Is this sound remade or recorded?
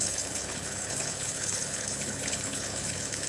remade